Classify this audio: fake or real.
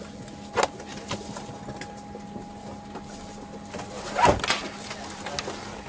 real